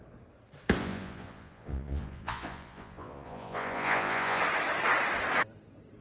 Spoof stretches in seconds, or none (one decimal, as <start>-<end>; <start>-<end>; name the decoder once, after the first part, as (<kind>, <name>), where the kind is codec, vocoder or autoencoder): 0.8-4.4 (vocoder, Vocos)